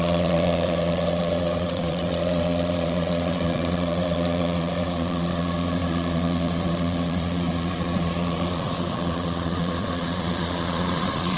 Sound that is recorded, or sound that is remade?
remade